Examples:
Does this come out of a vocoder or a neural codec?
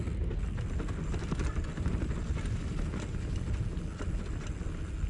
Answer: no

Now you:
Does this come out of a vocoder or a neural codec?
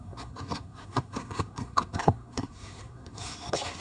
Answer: yes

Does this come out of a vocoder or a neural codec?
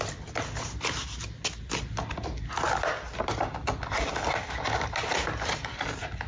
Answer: no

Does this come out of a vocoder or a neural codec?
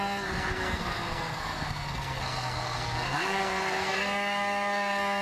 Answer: yes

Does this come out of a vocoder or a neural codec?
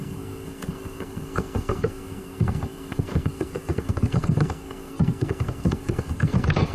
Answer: yes